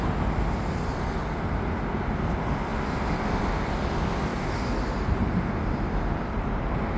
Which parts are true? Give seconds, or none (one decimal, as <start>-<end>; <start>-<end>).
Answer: 0.0-4.3